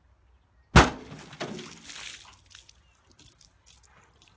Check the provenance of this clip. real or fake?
real